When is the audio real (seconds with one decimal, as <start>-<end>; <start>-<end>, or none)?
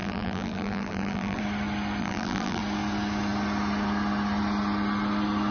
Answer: 1.4-2.0; 2.6-5.5